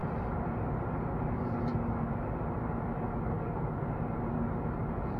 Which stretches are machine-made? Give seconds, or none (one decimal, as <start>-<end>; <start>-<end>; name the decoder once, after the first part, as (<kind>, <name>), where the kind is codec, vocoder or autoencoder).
none